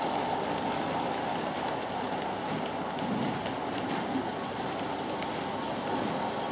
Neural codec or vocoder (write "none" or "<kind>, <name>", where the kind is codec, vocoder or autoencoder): none